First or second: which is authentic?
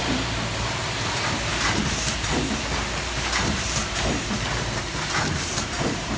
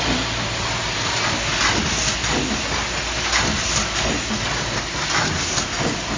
second